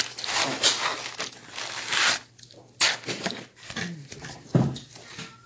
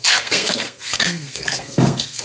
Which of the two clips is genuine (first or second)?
first